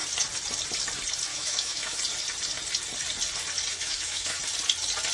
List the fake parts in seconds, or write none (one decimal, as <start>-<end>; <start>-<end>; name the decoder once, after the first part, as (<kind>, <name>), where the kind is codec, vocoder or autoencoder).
1.3-2.0 (autoencoder, DAC-VAE); 3.7-4.4